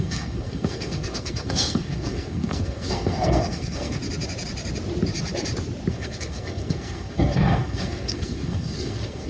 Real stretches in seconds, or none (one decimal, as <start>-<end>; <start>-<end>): 4.0-5.9